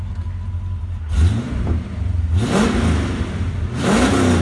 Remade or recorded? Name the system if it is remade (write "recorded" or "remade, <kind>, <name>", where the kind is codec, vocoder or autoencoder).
recorded